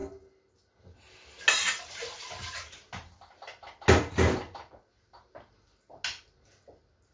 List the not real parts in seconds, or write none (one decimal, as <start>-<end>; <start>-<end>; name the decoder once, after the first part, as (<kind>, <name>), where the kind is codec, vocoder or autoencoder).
none